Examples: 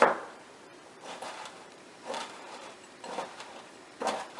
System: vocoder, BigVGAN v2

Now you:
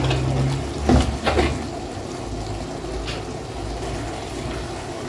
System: none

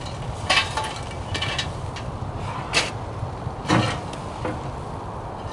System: none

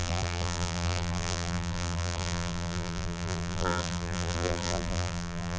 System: vocoder, BigVGAN v2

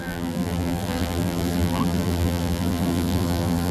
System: vocoder, BigVGAN v2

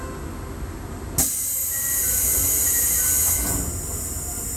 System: none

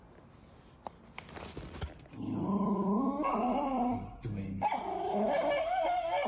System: vocoder, BigVGAN v2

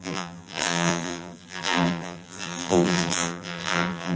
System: vocoder, BigVGAN v2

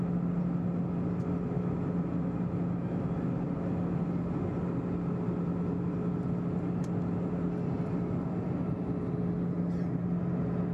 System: none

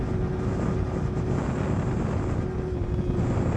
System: none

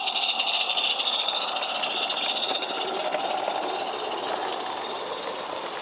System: none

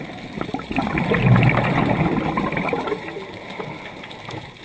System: none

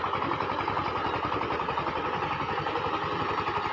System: vocoder, BigVGAN v2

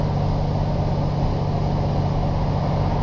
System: none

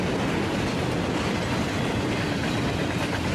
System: none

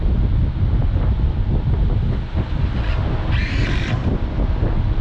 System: none